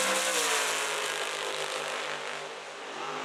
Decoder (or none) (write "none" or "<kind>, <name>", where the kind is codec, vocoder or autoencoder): none